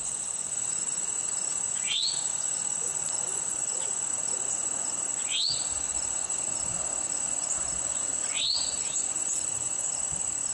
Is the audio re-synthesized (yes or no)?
yes